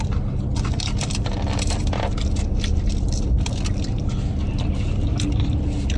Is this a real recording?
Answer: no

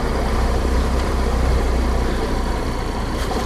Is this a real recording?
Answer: no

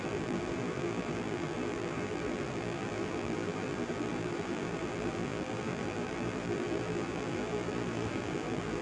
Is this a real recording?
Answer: no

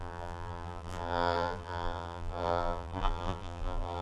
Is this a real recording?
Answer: no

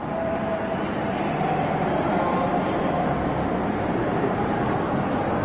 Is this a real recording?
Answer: no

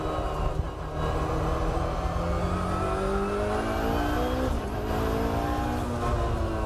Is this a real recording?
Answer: yes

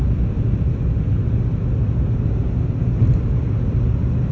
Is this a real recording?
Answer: yes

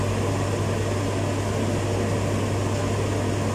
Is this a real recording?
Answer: yes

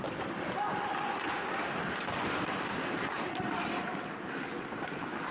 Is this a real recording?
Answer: yes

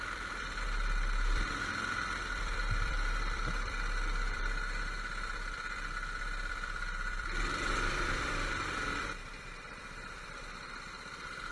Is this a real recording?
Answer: no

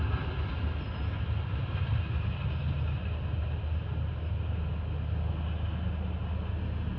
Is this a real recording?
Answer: yes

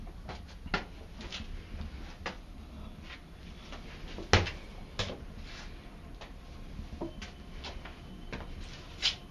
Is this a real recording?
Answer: yes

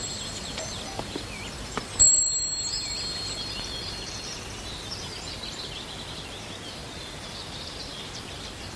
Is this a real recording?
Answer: no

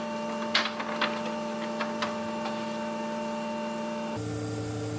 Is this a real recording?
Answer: no